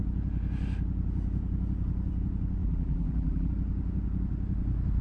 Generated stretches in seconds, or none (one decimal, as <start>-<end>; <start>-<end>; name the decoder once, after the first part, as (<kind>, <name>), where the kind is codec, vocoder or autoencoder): 2.6-3.5 (vocoder, BigVGAN v2)